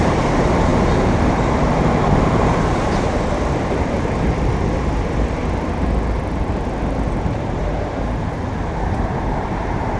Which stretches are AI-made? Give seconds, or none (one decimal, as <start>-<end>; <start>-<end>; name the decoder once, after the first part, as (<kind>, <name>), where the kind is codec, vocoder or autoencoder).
0.0-5.4 (vocoder, BigVGAN v2); 6.2-10.0